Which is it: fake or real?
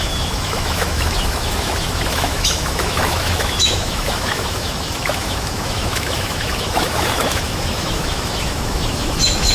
fake